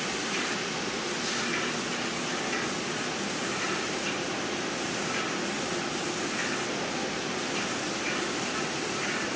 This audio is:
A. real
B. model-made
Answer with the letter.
B